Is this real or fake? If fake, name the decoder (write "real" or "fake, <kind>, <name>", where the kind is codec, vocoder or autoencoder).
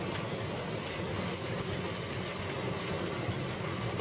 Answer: real